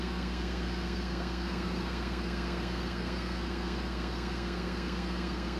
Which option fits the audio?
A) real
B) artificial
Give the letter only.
B